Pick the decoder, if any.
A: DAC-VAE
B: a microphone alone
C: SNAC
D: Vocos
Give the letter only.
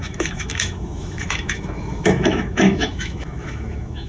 A